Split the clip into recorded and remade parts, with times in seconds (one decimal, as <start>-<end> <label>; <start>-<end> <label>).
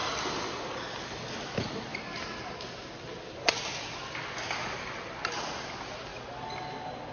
0.0-7.1 recorded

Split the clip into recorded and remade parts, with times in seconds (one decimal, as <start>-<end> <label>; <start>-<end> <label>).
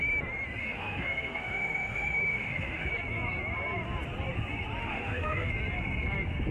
0.0-0.6 recorded; 0.6-2.9 remade; 2.9-4.8 recorded; 4.8-5.5 remade; 5.5-6.5 recorded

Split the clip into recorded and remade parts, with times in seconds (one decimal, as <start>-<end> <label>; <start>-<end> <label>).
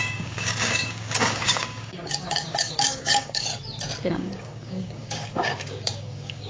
0.0-3.5 remade; 3.5-4.1 recorded; 4.1-6.5 remade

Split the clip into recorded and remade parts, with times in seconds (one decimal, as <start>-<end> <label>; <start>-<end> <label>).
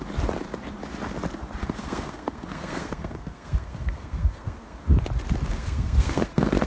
0.0-1.6 recorded; 1.6-4.8 remade; 4.8-5.5 recorded; 5.5-6.7 remade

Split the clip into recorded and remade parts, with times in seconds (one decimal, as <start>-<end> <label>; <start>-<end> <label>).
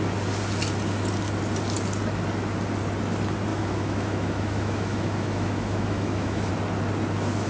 0.0-3.5 recorded; 3.5-6.5 remade; 6.5-7.5 recorded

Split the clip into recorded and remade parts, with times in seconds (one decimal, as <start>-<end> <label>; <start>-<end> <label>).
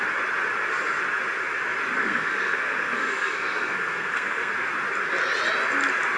0.0-2.0 recorded; 2.0-4.5 remade; 4.5-6.2 recorded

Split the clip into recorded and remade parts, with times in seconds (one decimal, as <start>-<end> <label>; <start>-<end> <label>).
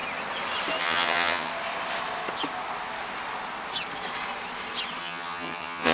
0.0-0.8 recorded; 0.8-1.5 remade; 1.5-5.0 recorded; 5.0-5.9 remade